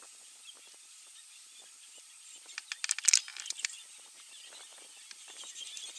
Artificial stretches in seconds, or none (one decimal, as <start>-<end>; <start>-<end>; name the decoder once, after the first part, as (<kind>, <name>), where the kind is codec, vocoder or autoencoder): 3.3-4.3 (vocoder, BigVGAN v2); 4.7-5.5